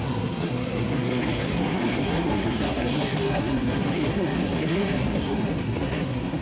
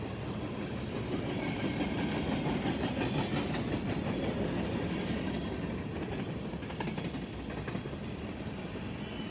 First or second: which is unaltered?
second